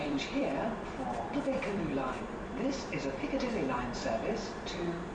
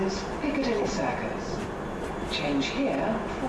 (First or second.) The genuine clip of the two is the second